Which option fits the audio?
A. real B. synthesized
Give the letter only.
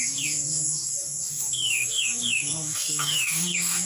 B